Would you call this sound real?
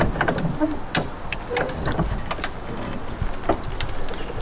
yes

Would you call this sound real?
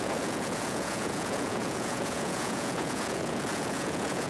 no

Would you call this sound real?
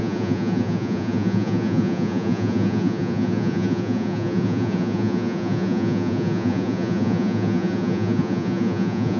no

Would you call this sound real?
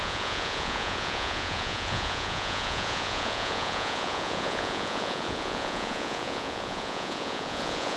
no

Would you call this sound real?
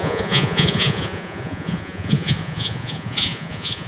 no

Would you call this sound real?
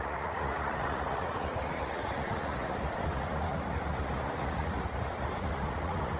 no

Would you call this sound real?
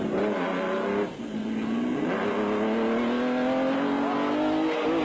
yes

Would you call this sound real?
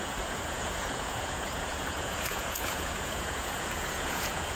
no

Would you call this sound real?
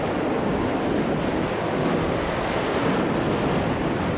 yes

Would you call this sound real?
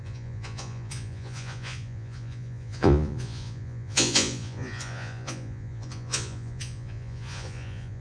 no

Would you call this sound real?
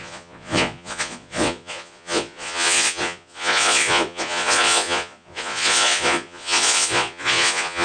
no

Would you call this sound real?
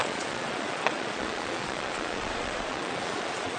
no